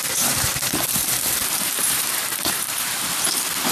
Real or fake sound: fake